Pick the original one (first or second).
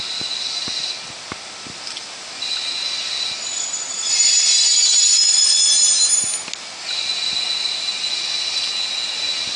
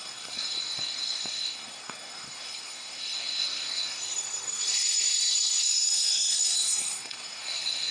first